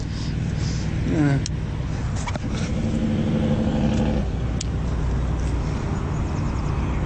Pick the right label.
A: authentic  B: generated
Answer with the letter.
A